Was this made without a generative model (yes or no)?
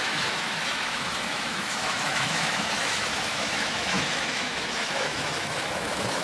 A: no